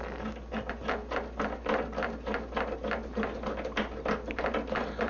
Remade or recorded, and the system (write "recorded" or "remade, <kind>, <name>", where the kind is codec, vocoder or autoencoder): recorded